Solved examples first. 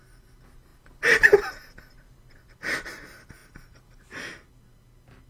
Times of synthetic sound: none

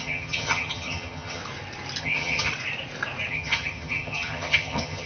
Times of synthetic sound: 0.0-1.4 (vocoder, HiFi-GAN); 2.0-2.5; 3.3-5.1

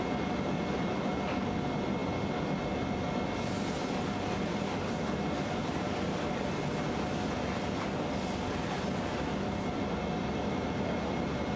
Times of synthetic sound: none

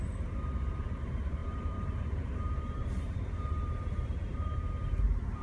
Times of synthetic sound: 0.0-5.4 (vocoder, BigVGAN v2)

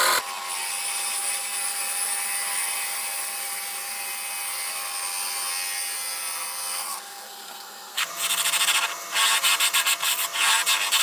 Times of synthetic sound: 6.8-8.1 (codec, SNAC)

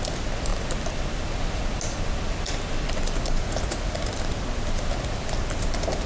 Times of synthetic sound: none

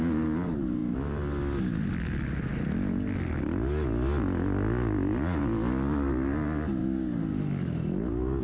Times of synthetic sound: 6.8-7.4 (codec, DAC)